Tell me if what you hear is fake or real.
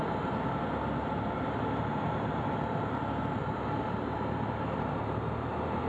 real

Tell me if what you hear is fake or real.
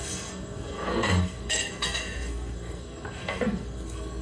fake